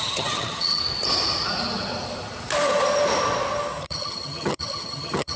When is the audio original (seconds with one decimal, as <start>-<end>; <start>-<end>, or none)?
0.8-3.8